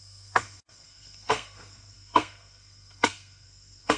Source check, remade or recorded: remade